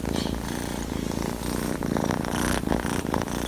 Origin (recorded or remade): recorded